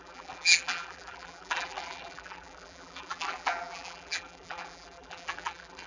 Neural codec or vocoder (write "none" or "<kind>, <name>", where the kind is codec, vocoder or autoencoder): vocoder, BigVGAN v2